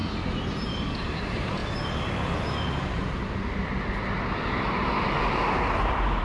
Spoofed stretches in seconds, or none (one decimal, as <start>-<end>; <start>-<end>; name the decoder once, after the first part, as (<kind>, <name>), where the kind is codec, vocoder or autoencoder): 1.1-1.6 (vocoder, BigVGAN v2); 5.2-6.2